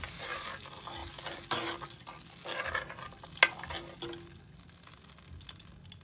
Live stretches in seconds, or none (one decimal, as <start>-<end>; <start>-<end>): 0.0-6.0